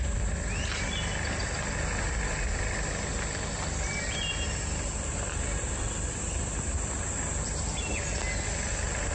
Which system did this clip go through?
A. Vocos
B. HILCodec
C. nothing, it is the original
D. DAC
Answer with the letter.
C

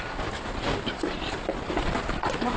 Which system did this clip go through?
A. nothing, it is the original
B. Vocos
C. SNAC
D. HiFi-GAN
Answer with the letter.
A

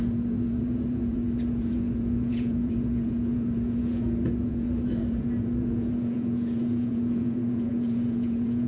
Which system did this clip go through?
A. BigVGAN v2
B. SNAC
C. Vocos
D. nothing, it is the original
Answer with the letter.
C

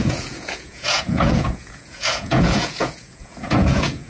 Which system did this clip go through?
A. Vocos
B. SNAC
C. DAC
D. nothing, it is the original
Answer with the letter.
A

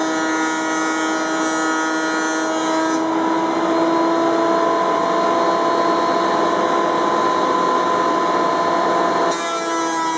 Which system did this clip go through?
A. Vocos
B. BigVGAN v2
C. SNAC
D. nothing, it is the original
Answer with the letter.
D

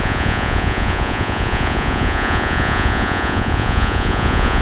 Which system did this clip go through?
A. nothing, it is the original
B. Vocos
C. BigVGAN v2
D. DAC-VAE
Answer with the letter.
B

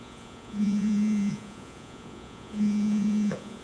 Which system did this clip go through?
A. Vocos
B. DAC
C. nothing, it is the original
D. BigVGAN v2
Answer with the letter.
A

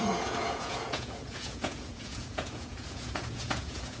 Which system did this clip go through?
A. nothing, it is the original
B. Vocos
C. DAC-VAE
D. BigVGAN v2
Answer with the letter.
B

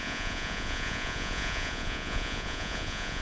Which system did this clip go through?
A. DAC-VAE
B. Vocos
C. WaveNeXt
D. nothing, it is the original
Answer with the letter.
B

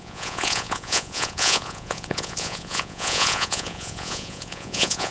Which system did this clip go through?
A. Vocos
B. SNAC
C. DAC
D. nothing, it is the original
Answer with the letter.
A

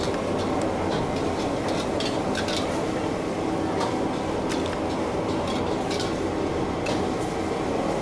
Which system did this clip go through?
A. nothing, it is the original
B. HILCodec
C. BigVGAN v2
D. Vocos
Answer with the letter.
A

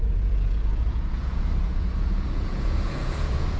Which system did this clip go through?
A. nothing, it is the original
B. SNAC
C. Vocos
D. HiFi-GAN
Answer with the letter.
C